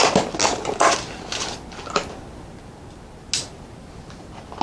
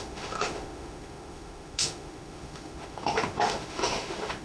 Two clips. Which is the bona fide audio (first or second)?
first